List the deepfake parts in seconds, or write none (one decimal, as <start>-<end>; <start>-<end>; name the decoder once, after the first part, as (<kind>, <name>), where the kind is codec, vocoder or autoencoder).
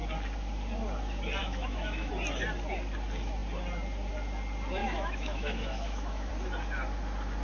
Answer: 1.4-2.1 (autoencoder, DAC-VAE); 4.8-6.3